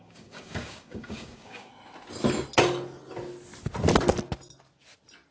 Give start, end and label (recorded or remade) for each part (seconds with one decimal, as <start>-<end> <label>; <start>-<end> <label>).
0.0-1.7 remade; 1.7-5.3 recorded